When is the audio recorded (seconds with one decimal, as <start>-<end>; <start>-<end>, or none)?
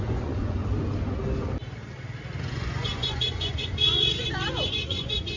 0.6-2.4